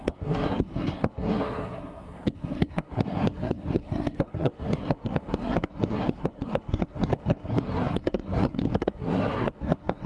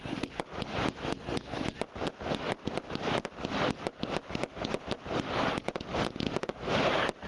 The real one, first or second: second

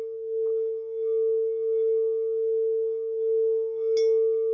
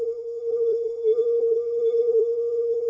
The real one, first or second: first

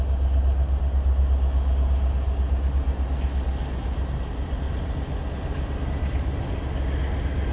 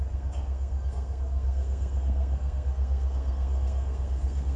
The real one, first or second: first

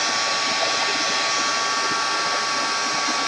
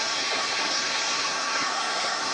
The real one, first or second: first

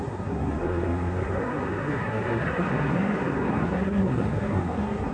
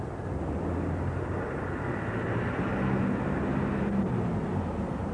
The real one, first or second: second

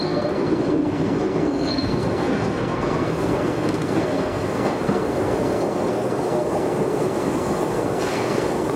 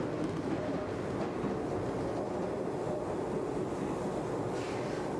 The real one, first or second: second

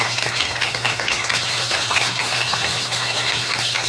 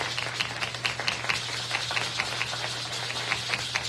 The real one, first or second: second